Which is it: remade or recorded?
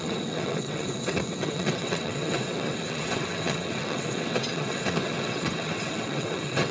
remade